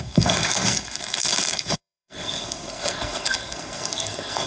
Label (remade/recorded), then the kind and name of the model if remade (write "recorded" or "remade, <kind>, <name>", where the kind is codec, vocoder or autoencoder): remade, codec, SNAC